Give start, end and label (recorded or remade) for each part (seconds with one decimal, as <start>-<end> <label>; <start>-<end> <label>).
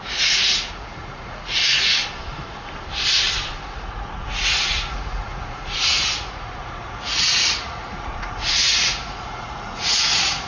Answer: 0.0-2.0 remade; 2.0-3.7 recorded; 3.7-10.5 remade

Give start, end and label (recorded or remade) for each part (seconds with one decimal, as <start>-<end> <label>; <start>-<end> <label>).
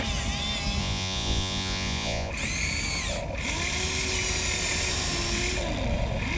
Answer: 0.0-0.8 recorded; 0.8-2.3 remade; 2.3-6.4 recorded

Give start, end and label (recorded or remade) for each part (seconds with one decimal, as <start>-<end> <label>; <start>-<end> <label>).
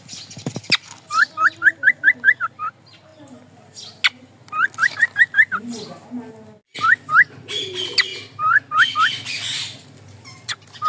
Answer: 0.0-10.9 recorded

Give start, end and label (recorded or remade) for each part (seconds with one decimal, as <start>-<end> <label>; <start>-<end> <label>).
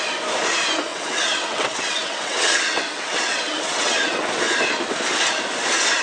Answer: 0.0-0.9 recorded; 0.9-4.2 remade; 4.2-6.0 recorded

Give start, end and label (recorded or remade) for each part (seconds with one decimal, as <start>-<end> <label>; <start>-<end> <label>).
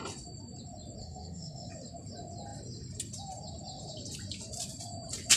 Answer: 0.0-1.0 recorded; 1.0-1.7 remade; 1.7-5.4 recorded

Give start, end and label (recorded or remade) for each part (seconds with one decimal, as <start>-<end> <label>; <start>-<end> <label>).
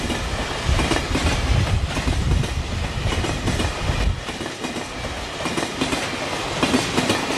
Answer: 0.0-7.4 recorded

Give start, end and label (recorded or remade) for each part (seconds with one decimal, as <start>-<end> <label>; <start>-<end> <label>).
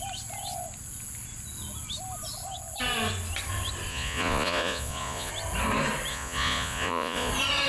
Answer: 0.0-3.9 recorded; 3.9-5.3 remade; 5.3-6.1 recorded; 6.1-7.3 remade; 7.3-7.7 recorded